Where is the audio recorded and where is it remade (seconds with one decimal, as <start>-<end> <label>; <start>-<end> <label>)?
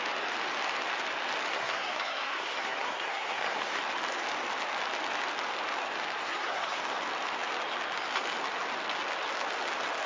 0.0-1.5 recorded; 1.5-3.8 remade; 3.8-6.2 recorded; 6.2-6.8 remade; 6.8-10.1 recorded